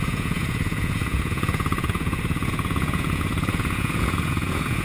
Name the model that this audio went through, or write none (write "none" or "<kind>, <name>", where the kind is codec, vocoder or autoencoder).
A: vocoder, Vocos